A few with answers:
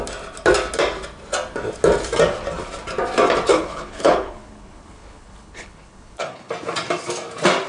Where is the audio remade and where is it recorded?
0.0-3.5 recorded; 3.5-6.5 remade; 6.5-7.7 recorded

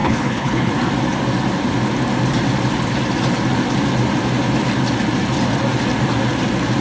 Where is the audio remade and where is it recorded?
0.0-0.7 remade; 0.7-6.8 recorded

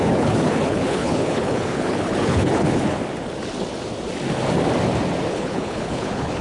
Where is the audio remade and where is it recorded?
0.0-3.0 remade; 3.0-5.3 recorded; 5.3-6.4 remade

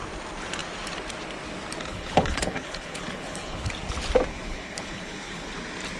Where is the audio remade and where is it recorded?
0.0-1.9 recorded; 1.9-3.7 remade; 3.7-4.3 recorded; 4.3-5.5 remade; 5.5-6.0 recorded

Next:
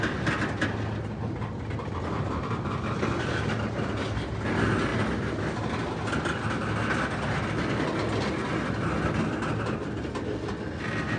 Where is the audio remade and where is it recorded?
0.0-11.2 recorded